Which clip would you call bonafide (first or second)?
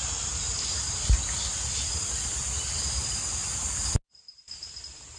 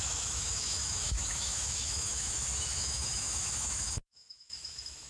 first